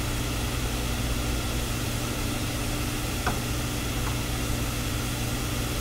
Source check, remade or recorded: recorded